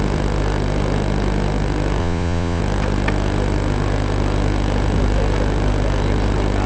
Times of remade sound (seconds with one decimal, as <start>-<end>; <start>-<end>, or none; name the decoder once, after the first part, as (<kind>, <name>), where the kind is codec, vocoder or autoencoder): 2.0-2.6 (vocoder, Vocos)

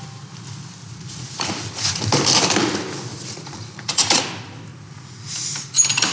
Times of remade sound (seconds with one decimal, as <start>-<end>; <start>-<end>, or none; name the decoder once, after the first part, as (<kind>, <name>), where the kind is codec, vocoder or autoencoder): 0.8-2.0 (vocoder, Vocos); 3.1-4.2; 4.7-5.2